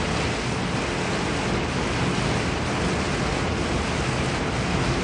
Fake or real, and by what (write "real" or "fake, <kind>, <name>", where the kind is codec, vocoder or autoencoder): real